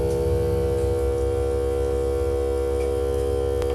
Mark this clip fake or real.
real